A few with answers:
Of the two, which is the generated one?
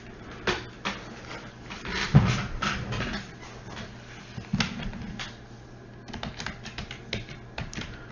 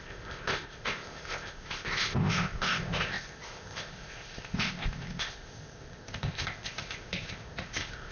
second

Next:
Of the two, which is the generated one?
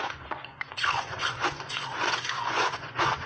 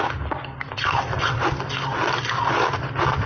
first